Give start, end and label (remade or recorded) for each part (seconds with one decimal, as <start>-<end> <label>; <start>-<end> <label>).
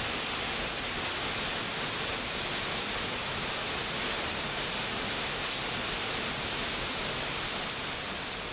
0.0-5.1 recorded; 5.1-5.6 remade; 5.6-8.5 recorded